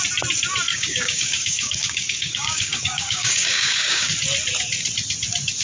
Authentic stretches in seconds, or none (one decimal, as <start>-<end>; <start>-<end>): 0.0-0.7; 4.1-5.6